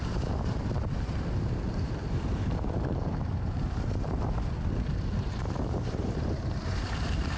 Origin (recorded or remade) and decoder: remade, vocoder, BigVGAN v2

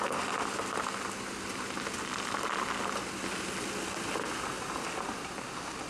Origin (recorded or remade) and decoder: recorded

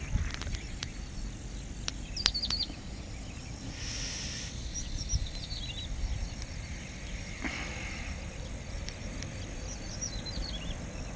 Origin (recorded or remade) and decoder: recorded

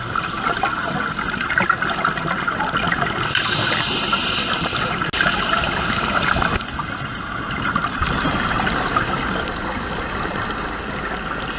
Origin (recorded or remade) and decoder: recorded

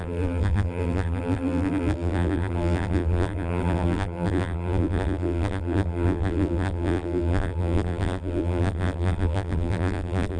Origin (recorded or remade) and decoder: remade, vocoder, BigVGAN v2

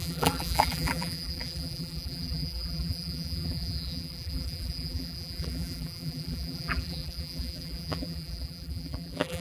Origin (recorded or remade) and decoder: remade, vocoder, BigVGAN v2